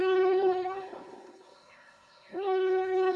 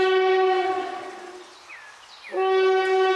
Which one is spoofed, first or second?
first